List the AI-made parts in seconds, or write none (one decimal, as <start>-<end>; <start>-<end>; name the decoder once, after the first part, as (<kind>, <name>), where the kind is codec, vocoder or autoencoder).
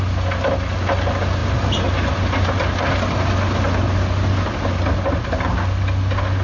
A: none